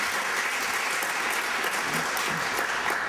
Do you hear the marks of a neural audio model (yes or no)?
no